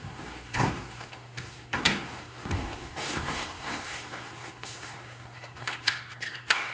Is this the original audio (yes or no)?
no